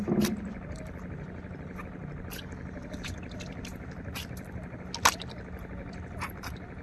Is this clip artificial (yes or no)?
no